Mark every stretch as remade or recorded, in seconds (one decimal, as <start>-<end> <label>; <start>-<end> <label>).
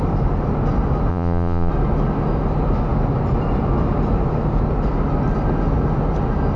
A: 0.0-1.1 recorded; 1.1-1.7 remade; 1.7-6.6 recorded